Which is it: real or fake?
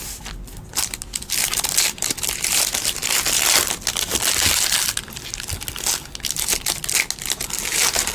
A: real